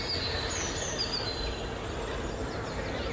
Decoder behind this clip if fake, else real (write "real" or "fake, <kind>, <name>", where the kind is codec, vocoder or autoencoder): real